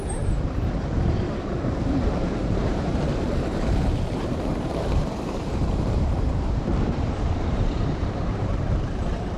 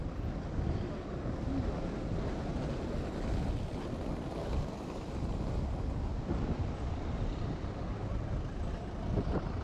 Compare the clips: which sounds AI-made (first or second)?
first